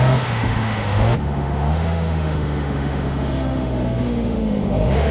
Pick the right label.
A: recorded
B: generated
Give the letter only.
B